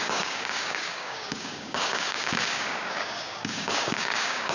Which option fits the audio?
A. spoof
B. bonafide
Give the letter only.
A